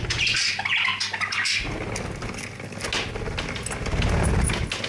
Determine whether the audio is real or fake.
real